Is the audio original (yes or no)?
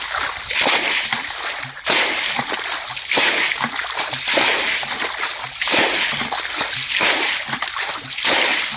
yes